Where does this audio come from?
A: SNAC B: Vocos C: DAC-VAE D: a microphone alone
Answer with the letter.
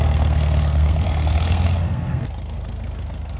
A